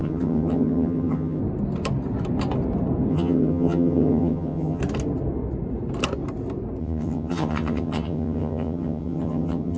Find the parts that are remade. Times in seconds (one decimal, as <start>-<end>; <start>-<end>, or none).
0.0-1.4; 3.1-4.8; 6.8-9.8